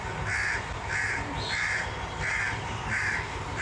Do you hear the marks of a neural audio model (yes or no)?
no